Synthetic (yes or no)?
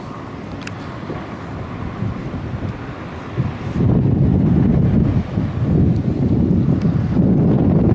no